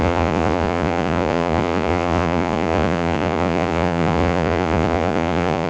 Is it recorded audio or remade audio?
remade